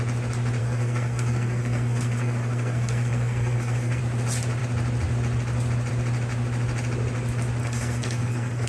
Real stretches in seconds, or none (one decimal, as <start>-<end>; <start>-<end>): 0.0-0.6; 4.0-7.6